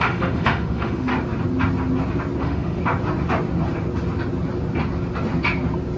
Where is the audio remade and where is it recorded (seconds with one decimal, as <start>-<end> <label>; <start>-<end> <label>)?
0.0-1.1 remade; 1.1-2.4 recorded; 2.4-2.8 remade; 2.8-6.0 recorded